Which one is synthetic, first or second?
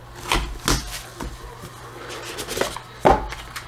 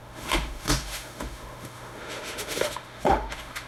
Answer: second